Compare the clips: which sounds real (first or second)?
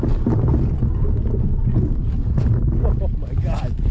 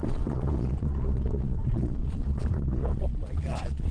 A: first